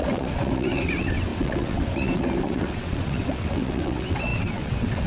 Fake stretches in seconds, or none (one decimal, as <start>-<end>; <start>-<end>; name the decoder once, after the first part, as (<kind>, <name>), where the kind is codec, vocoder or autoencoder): 0.0-5.1 (vocoder, WaveNeXt)

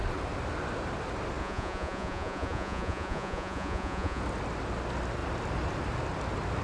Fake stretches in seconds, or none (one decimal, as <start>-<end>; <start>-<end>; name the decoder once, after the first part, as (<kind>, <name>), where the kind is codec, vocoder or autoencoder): 1.4-4.2 (vocoder, Vocos)

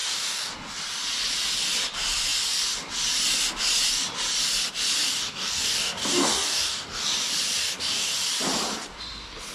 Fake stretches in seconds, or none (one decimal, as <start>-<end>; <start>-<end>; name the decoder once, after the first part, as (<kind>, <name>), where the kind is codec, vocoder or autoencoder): 0.0-0.5 (codec, DAC); 5.2-7.1; 7.6-8.1

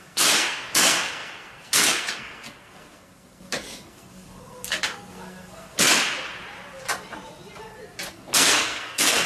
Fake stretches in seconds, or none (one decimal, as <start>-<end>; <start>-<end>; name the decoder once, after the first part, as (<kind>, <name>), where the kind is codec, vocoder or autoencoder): 0.0-5.9 (codec, SNAC); 8.1-9.3

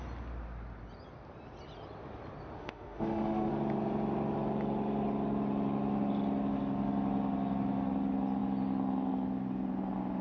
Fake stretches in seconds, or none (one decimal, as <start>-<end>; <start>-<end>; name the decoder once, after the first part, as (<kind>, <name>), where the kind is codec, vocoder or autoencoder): 2.6-3.5 (autoencoder, DAC-VAE)

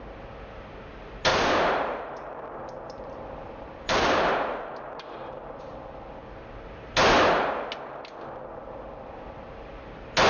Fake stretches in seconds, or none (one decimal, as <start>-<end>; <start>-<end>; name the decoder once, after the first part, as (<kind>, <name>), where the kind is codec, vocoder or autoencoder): 1.3-5.6 (vocoder, BigVGAN v2)

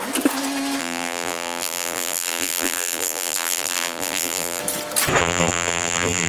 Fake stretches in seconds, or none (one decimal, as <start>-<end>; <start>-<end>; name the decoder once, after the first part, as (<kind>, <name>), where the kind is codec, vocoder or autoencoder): 0.8-4.6 (vocoder, BigVGAN v2); 5.2-6.3

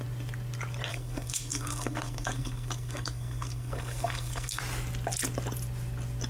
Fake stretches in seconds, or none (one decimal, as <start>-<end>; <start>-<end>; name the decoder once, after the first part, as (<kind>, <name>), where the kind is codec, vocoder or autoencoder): 0.9-4.6 (codec, SNAC)